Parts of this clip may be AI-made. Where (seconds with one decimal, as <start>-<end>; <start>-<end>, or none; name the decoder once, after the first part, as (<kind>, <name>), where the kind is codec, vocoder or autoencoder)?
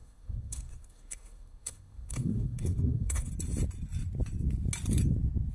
0.0-3.3 (codec, SNAC)